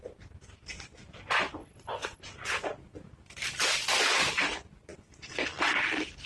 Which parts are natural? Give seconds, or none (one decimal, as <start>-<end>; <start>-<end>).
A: 0.0-1.6; 2.2-6.3

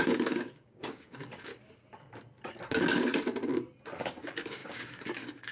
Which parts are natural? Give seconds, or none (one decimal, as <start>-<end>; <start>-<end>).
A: 1.5-2.5; 3.1-4.0

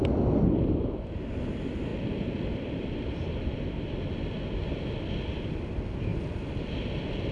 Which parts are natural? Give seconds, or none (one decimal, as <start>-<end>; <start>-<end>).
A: 0.0-7.3

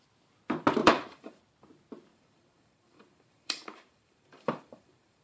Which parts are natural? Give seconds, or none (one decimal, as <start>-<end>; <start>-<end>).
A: 0.0-0.8; 1.4-2.1

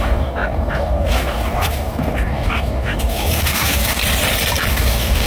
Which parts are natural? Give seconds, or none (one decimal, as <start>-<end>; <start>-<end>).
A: 4.0-4.7

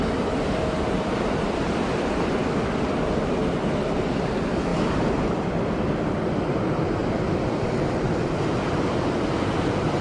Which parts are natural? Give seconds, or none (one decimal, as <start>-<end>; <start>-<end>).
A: 0.0-3.4; 4.1-4.7; 5.6-7.0; 8.1-10.0

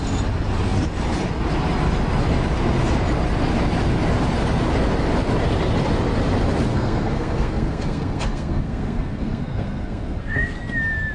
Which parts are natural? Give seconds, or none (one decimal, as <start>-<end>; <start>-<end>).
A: 0.0-6.7; 10.6-11.1

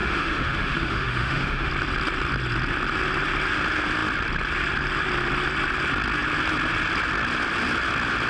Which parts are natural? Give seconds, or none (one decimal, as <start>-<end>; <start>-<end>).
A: 1.7-8.3